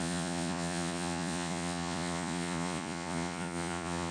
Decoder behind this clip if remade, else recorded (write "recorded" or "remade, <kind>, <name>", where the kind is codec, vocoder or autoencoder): remade, vocoder, Vocos